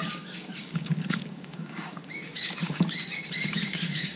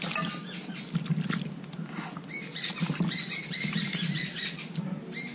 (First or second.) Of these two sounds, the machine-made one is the first